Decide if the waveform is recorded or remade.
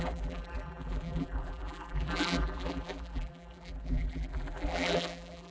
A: remade